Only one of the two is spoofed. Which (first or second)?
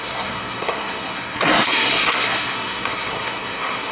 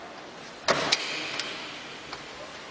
first